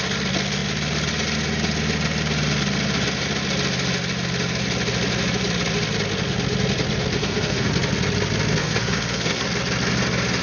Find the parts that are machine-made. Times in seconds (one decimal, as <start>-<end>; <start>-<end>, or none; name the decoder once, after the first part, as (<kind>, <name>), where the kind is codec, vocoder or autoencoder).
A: 7.2-7.7 (codec, SNAC); 8.6-9.4